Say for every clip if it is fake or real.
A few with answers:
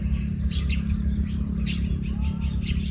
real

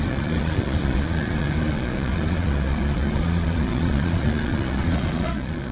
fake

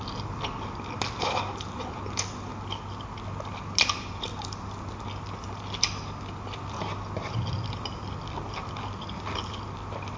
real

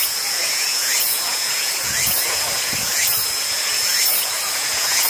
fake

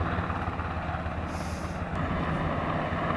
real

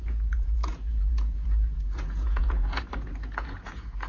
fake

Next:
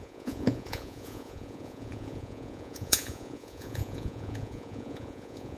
fake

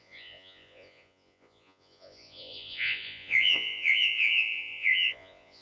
fake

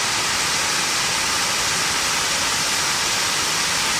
real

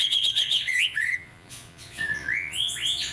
fake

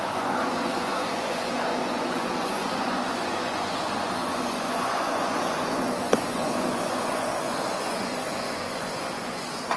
fake